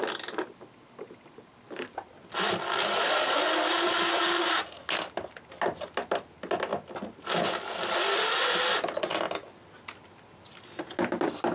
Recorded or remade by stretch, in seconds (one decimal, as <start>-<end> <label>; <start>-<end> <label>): 0.0-11.5 recorded

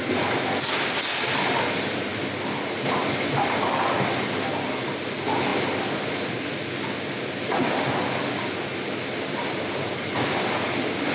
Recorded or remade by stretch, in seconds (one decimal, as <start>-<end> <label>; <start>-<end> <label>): 0.0-11.1 recorded

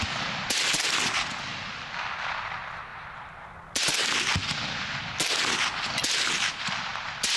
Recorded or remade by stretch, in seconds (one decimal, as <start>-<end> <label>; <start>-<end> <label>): 0.0-2.9 recorded; 2.9-3.5 remade; 3.5-7.4 recorded

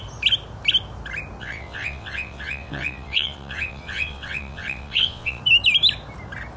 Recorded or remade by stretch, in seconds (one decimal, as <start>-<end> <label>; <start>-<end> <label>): 0.0-1.4 recorded; 1.4-5.4 remade; 5.4-6.6 recorded

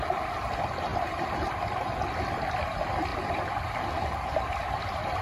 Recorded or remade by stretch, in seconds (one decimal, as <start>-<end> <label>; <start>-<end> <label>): 0.0-0.9 recorded; 0.9-2.5 remade; 2.5-3.1 recorded; 3.1-4.8 remade; 4.8-5.2 recorded

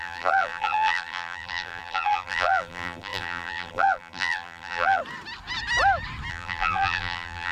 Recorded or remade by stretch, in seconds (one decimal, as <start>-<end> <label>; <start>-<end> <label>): 0.0-5.0 remade; 5.0-6.3 recorded; 6.3-7.5 remade

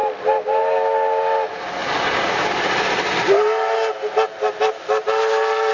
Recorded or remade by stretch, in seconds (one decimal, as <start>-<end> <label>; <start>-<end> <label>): 0.0-5.7 recorded